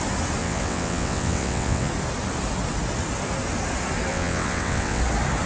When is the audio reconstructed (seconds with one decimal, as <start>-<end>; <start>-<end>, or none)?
0.4-1.9; 4.1-5.0